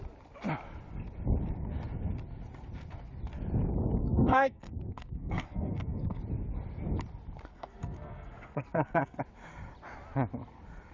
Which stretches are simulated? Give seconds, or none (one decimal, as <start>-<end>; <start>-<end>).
4.0-6.2; 7.5-9.2